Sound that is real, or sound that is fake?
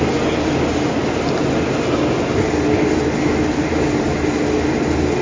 real